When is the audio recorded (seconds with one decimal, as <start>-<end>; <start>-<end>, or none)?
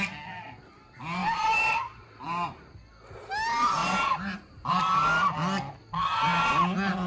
0.0-1.2; 2.6-3.8; 4.7-7.1